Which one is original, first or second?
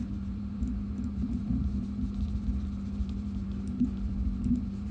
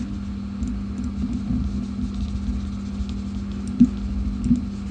second